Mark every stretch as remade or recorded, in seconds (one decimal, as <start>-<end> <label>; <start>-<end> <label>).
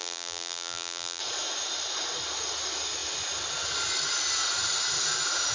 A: 0.0-1.2 remade; 1.2-5.5 recorded